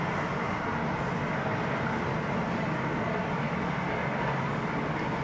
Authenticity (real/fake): real